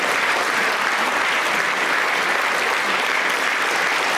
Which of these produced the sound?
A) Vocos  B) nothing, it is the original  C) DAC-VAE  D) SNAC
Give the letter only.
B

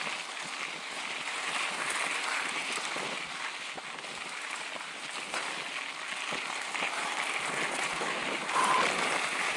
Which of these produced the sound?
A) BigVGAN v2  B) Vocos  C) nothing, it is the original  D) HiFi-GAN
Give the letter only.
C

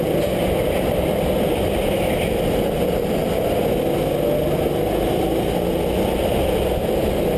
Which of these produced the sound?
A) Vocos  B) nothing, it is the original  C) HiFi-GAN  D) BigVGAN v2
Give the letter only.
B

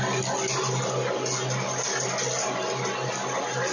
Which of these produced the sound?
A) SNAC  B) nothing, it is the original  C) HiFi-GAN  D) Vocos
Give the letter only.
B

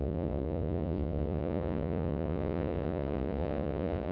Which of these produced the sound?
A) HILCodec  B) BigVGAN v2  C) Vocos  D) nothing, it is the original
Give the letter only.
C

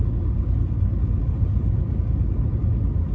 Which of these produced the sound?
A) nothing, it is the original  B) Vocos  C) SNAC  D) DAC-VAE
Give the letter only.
A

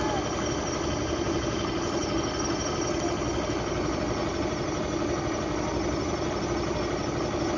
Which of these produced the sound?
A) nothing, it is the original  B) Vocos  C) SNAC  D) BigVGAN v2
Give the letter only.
A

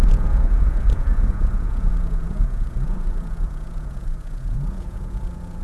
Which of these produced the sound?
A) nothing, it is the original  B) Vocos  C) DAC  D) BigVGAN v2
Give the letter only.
B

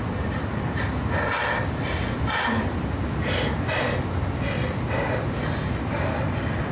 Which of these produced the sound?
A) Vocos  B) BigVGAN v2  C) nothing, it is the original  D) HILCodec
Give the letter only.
C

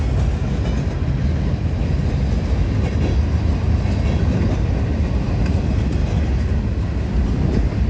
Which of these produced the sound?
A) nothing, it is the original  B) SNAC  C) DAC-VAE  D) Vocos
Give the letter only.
A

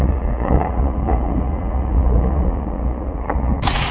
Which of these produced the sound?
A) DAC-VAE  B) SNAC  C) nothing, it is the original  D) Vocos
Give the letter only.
D